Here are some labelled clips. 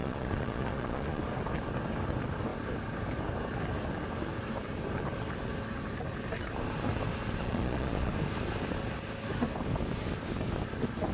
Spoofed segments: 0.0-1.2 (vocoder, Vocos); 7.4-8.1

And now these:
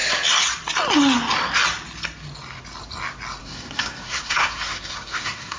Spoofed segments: 3.4-5.6 (codec, SNAC)

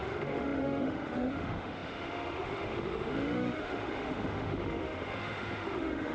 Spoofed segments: 0.0-6.1 (autoencoder, DAC-VAE)